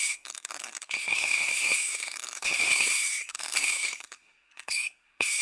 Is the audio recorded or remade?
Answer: remade